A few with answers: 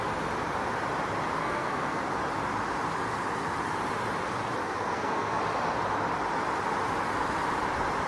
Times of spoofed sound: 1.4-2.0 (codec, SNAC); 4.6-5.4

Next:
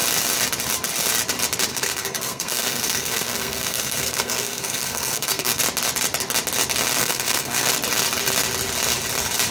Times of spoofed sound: 1.7-5.6 (codec, SNAC); 7.0-7.7

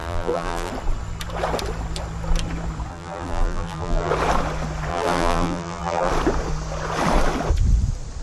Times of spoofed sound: 0.0-0.7 (vocoder, BigVGAN v2); 2.9-4.1; 4.9-6.1

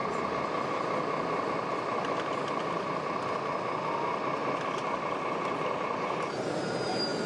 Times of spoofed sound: none

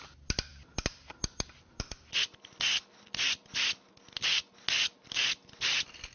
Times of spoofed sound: none

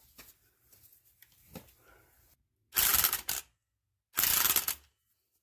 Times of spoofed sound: none